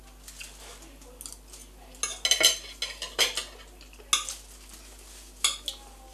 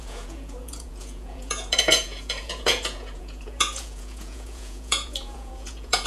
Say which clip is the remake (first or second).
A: second